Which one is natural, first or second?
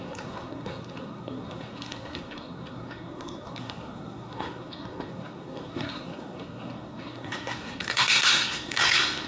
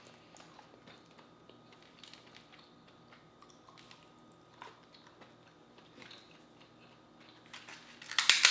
second